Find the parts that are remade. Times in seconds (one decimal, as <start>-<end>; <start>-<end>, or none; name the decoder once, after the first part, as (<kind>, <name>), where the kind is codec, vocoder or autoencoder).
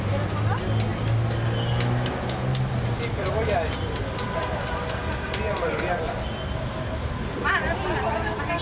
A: none